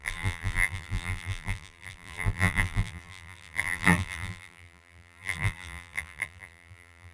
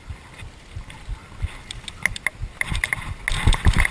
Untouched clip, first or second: second